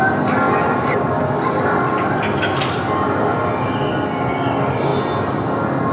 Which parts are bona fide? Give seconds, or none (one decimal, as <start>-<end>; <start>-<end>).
0.0-5.9

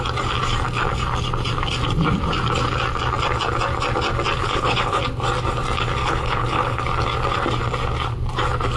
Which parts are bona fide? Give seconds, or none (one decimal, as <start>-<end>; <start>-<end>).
0.0-4.4; 5.0-6.0; 6.8-8.8

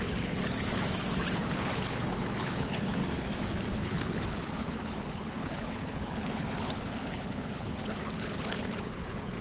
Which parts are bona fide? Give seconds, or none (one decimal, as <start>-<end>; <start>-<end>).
3.0-3.7

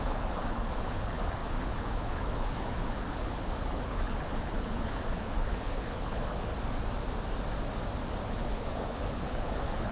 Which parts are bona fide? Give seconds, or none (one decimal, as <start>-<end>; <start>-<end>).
6.5-8.3